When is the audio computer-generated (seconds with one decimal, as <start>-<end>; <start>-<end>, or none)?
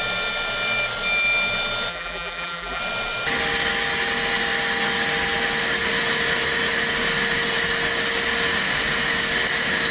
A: 1.9-2.8